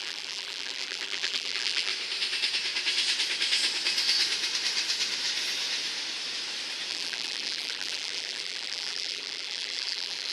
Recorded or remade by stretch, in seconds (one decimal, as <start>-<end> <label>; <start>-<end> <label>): 0.0-1.9 remade; 1.9-6.9 recorded; 6.9-10.3 remade